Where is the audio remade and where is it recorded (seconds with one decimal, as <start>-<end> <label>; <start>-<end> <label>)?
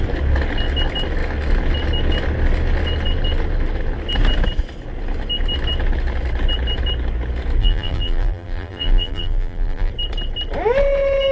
0.0-7.6 recorded; 7.6-9.9 remade; 9.9-11.3 recorded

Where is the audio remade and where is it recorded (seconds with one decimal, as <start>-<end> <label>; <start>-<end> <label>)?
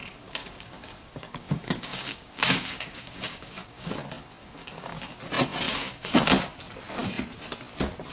0.0-3.9 remade; 3.9-4.4 recorded; 4.4-5.2 remade; 5.2-5.7 recorded; 5.7-6.2 remade; 6.2-8.1 recorded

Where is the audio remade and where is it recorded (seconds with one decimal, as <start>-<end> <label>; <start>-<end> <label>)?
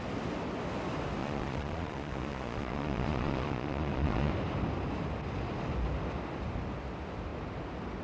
0.0-1.2 recorded; 1.2-4.3 remade; 4.3-8.0 recorded